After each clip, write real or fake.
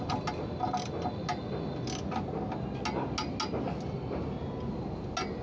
real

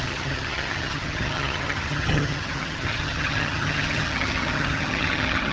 fake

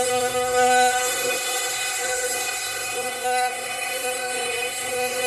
fake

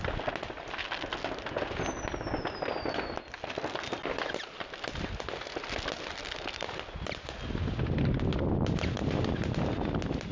real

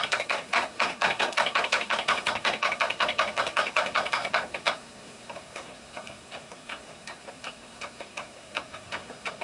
fake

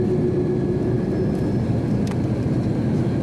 real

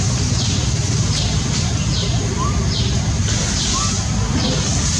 real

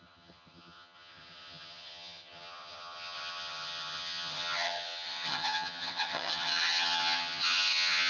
fake